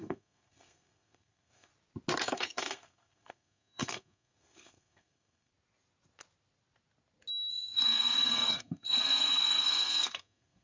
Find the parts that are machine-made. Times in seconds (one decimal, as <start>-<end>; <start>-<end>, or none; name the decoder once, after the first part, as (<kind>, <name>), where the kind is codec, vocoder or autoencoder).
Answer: 0.0-1.7 (codec, SNAC); 2.2-5.5; 7.5-10.6